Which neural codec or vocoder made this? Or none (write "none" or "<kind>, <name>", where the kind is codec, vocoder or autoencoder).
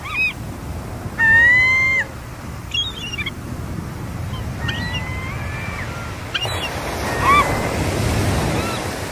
none